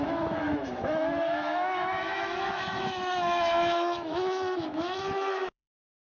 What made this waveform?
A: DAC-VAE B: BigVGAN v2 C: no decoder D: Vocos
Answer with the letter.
A